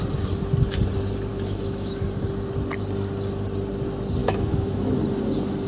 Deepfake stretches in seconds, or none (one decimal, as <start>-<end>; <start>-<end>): 1.3-1.9; 4.2-5.0